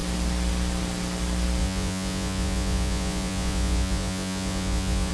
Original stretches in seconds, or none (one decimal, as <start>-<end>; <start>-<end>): 0.0-1.6